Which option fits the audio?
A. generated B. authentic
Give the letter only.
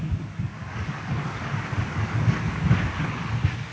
A